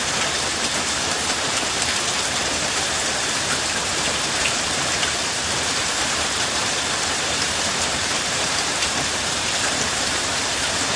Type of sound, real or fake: fake